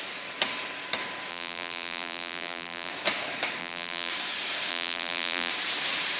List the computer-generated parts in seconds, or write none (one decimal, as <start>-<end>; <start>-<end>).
1.3-2.9; 3.6-4.1; 4.7-5.5